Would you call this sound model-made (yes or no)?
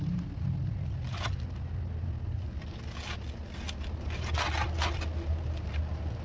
no